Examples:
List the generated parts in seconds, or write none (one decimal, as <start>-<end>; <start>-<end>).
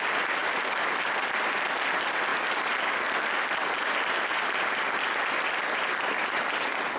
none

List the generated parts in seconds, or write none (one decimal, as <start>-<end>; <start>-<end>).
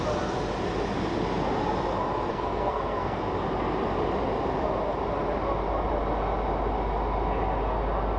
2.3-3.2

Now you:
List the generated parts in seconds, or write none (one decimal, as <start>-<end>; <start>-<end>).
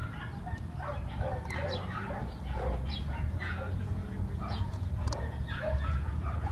2.2-6.5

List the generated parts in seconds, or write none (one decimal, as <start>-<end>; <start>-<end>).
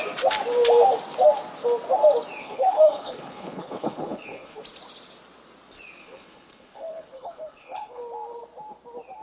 2.4-4.6; 6.0-8.0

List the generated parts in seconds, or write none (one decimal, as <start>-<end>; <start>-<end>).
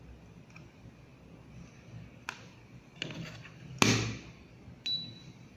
none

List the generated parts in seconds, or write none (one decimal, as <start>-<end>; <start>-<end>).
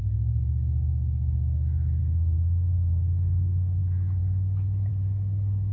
2.0-3.8